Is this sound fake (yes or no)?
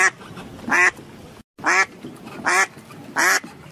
no